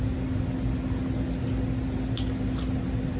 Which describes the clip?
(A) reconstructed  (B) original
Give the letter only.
B